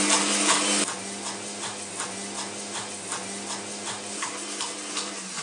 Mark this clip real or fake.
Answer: real